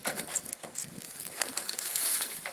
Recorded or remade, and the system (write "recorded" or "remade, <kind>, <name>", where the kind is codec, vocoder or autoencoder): remade, codec, SNAC